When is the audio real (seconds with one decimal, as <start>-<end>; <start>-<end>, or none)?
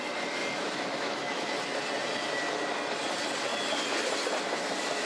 0.0-0.4; 1.6-5.1